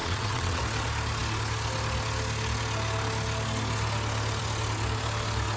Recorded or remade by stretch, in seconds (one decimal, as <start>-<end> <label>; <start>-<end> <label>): 0.0-0.6 remade; 0.6-5.6 recorded